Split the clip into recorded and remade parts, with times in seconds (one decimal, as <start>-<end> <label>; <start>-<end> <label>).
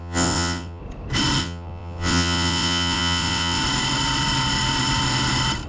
0.0-0.8 remade; 0.8-1.4 recorded; 1.4-3.6 remade; 3.6-5.7 recorded